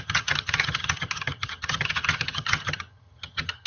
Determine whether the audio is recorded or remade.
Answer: remade